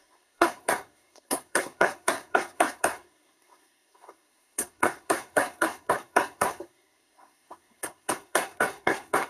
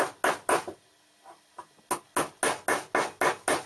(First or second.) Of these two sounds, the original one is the second